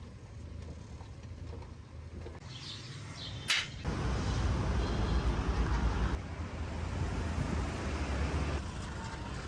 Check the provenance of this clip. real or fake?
real